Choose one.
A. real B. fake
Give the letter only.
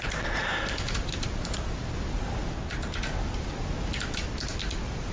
A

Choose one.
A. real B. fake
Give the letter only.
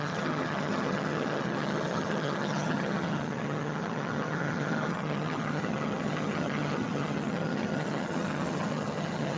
B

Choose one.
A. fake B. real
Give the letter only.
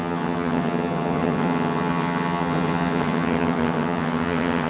A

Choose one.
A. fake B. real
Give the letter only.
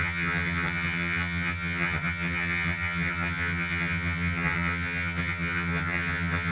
A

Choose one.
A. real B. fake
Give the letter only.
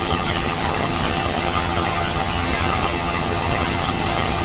B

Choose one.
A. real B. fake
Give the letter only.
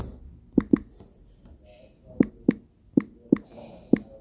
A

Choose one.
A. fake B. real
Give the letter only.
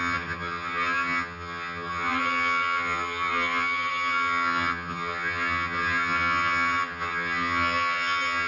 A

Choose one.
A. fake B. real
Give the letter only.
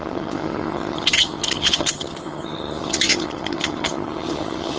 A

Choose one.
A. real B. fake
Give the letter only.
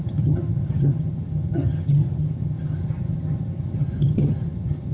B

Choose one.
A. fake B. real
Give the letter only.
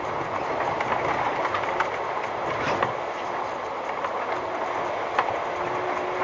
B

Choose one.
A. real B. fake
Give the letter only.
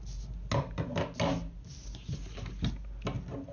A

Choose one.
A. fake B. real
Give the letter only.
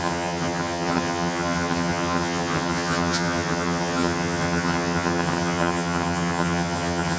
A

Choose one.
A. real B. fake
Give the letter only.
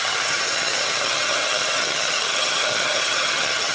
B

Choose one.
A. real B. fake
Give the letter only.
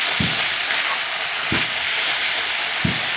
A